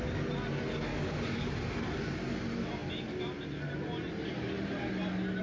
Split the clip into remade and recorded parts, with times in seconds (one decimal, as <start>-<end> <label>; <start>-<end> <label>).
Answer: 0.0-0.9 recorded; 0.9-1.5 remade; 1.5-5.4 recorded